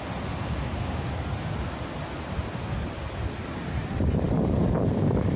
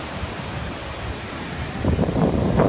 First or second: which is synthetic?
second